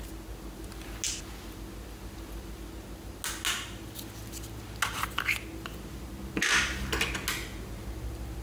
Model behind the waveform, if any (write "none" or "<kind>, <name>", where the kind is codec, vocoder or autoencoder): none